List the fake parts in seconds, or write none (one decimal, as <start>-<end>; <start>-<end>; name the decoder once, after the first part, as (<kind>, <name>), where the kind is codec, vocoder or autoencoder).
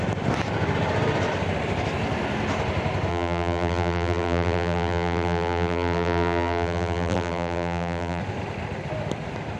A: 3.1-8.2 (vocoder, BigVGAN v2)